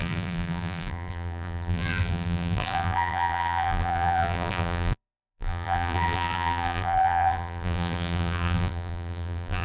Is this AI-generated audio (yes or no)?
yes